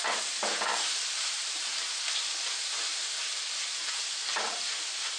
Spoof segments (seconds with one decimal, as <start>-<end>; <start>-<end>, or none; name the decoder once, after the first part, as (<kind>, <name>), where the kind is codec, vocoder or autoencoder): 0.7-2.2 (vocoder, BigVGAN v2); 2.9-4.0